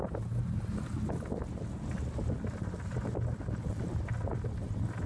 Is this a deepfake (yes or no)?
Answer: no